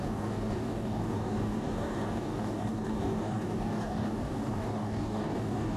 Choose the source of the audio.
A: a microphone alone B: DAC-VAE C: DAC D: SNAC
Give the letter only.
C